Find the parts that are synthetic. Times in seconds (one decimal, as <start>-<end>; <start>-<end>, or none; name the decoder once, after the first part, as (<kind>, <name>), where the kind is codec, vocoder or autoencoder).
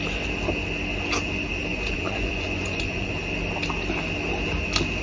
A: 1.7-3.1 (vocoder, Vocos)